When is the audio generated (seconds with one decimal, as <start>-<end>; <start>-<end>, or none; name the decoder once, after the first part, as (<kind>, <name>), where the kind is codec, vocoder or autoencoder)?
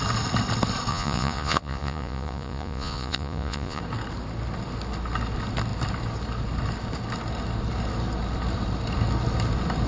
0.9-3.8 (vocoder, Vocos)